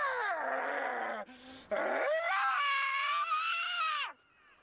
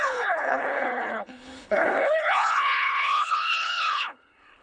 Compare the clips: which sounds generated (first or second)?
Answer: second